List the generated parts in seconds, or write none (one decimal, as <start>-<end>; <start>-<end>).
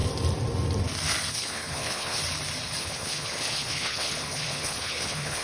1.3-2.2; 2.8-5.4